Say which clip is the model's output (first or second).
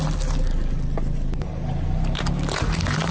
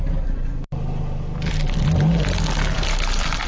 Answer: second